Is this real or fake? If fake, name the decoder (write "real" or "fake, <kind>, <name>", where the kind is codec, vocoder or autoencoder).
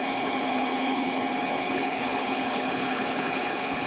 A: fake, codec, HILCodec